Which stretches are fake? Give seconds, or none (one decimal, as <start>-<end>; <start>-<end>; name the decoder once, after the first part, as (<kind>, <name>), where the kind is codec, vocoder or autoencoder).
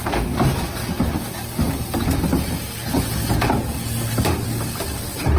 none